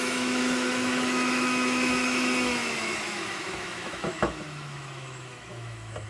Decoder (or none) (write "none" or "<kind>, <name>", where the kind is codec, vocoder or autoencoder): autoencoder, DAC-VAE